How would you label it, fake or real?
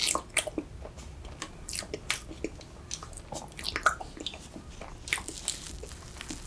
real